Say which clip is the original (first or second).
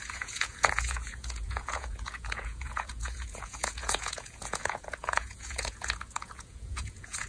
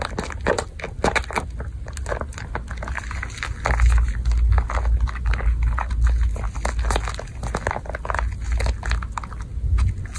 second